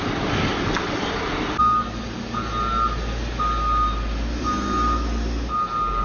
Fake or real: real